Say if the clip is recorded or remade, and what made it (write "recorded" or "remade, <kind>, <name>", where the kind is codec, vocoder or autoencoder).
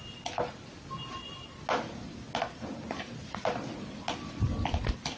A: recorded